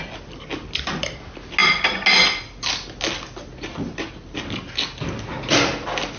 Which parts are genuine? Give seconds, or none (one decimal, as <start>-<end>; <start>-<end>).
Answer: 0.0-6.2